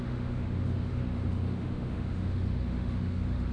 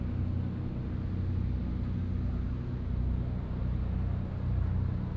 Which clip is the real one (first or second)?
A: second